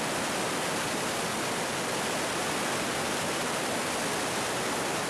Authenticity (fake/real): real